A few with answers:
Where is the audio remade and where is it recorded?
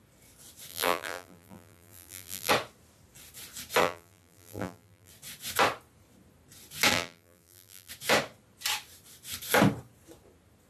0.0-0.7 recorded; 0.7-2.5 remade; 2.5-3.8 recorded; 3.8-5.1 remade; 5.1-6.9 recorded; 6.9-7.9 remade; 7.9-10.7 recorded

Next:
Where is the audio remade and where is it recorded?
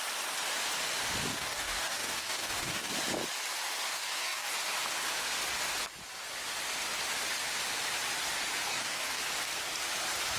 0.0-1.3 recorded; 1.3-2.9 remade; 2.9-3.9 recorded; 3.9-4.5 remade; 4.5-8.7 recorded; 8.7-9.2 remade; 9.2-10.4 recorded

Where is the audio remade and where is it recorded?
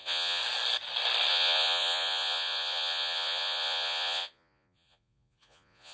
0.0-0.4 remade; 0.4-1.3 recorded; 1.3-5.9 remade